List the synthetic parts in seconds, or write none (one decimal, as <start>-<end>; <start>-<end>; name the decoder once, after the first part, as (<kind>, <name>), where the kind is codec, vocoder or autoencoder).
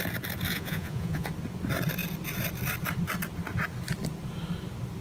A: 0.5-1.3 (vocoder, Vocos)